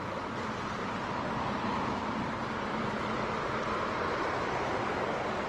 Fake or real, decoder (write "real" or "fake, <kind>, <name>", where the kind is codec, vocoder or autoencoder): real